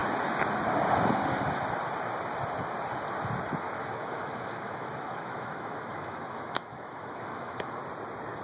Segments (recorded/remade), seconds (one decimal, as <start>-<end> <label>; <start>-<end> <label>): 0.0-3.8 recorded; 3.8-7.8 remade; 7.8-8.4 recorded